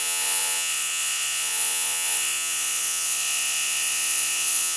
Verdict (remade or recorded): remade